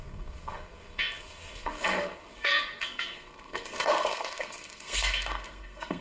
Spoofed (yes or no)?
yes